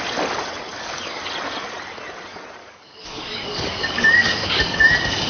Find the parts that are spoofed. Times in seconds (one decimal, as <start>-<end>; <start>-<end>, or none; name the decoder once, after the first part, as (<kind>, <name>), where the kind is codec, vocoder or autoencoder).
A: 0.7-1.2 (codec, DAC); 2.6-5.3